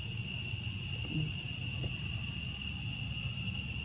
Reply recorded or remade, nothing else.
recorded